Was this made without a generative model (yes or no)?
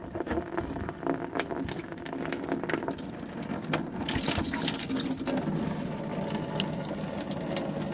yes